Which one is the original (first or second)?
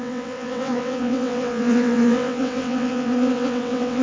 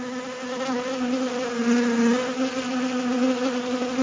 second